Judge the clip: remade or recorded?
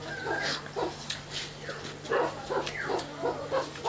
recorded